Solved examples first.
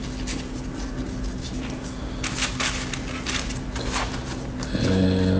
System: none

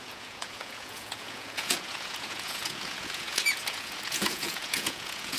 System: vocoder, Vocos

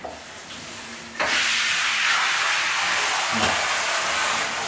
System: none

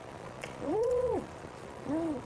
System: vocoder, Vocos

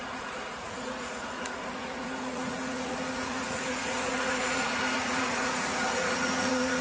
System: vocoder, Vocos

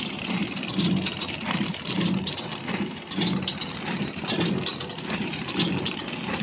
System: none